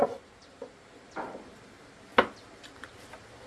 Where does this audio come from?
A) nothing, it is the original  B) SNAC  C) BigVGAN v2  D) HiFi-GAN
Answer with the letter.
C